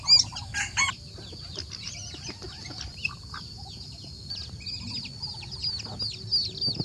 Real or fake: real